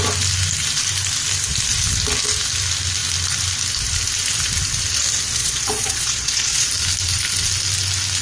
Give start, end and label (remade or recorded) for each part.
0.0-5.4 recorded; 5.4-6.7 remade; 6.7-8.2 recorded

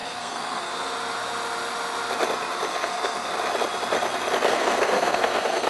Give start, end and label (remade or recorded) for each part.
0.0-0.7 remade; 0.7-2.7 recorded; 2.7-3.3 remade; 3.3-4.5 recorded; 4.5-5.7 remade

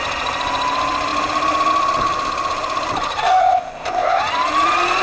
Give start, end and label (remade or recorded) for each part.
0.0-3.4 recorded; 3.4-4.2 remade; 4.2-5.0 recorded

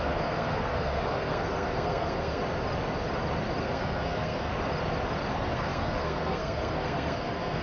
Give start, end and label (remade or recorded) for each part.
0.0-2.4 remade; 2.4-3.6 recorded; 3.6-4.5 remade; 4.5-5.3 recorded; 5.3-7.6 remade

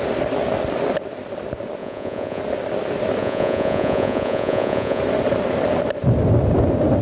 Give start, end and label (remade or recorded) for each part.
0.0-1.8 recorded; 1.8-2.4 remade; 2.4-3.2 recorded; 3.2-5.0 remade; 5.0-7.0 recorded

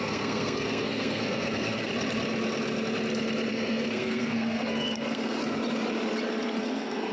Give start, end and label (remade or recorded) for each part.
0.0-1.9 remade; 1.9-3.5 recorded; 3.5-5.4 remade; 5.4-6.6 recorded; 6.6-7.1 remade